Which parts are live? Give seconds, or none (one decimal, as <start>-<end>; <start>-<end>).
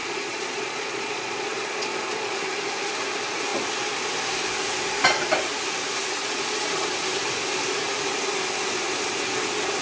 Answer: 2.4-6.2; 6.9-9.8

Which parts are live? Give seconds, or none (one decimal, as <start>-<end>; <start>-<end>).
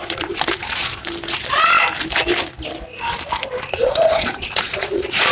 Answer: 1.0-3.6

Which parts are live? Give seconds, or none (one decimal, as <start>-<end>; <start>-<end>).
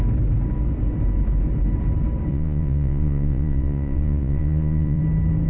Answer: 0.0-2.3; 5.0-5.5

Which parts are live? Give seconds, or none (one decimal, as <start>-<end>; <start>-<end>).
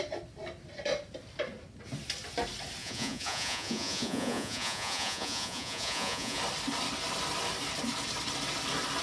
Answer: 0.0-2.8; 6.4-9.0